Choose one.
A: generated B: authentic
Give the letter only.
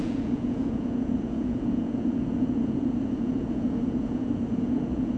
A